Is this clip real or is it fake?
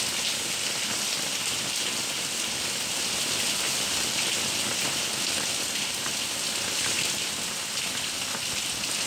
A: real